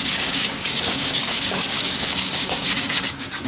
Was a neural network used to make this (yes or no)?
yes